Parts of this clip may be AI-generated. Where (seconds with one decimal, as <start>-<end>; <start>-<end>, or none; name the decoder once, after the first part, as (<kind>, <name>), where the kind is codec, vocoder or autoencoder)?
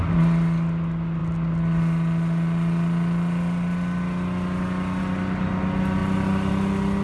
none